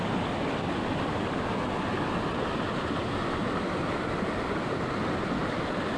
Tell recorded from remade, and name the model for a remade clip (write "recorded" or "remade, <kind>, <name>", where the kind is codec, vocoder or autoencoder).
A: recorded